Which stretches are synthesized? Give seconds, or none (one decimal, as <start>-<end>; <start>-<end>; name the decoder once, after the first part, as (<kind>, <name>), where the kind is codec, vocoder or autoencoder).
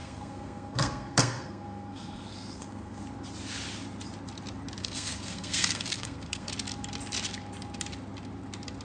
0.0-3.0 (codec, SNAC); 4.8-6.5